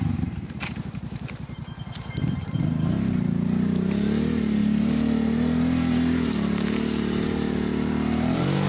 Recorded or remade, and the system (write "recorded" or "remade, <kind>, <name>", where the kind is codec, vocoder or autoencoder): remade, vocoder, BigVGAN v2